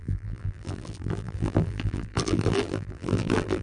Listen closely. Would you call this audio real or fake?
fake